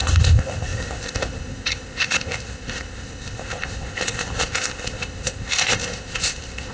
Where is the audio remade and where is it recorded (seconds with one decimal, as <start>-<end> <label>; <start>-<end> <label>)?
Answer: 0.0-6.7 remade